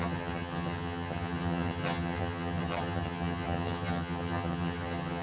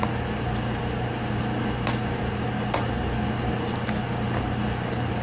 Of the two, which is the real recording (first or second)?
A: second